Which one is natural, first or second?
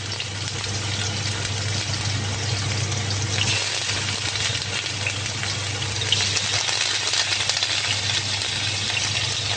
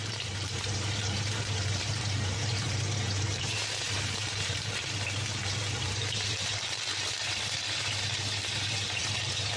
first